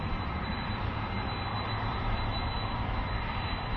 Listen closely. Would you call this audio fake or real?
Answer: fake